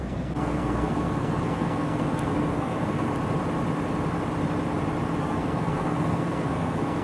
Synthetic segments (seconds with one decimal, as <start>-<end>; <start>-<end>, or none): 0.0-3.1; 5.2-7.0